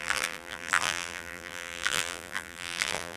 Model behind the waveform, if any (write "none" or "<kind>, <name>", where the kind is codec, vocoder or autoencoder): vocoder, BigVGAN v2